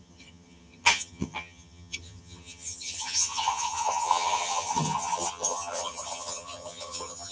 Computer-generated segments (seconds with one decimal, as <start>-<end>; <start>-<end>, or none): 0.0-7.3